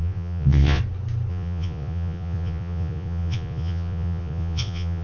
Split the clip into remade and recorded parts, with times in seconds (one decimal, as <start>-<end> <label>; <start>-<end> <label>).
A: 0.0-0.8 remade; 0.8-1.3 recorded; 1.3-5.0 remade